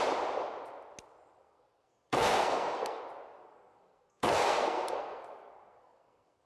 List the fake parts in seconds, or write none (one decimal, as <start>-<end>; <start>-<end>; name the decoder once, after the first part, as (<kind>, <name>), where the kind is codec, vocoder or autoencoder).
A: 1.4-3.0 (codec, SNAC); 3.4-6.5